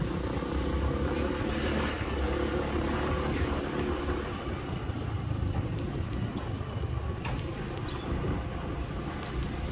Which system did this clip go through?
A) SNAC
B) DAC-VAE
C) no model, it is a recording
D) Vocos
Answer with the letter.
C